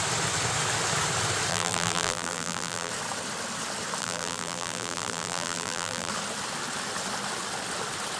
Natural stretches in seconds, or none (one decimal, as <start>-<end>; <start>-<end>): 0.0-1.5; 2.9-4.0; 6.1-8.2

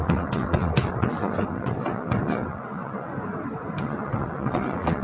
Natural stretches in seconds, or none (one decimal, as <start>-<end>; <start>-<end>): 3.1-3.8

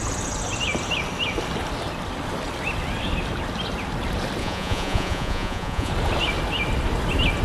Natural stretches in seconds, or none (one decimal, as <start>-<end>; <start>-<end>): 0.0-4.4; 5.9-7.4